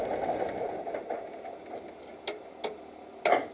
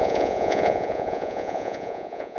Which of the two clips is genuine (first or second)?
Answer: first